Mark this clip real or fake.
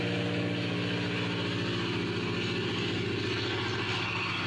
real